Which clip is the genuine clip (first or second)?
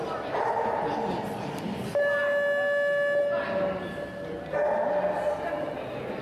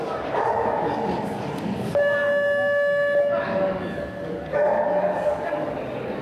first